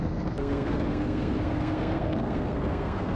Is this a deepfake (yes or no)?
yes